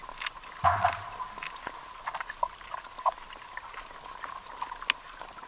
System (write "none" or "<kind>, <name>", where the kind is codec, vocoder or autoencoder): none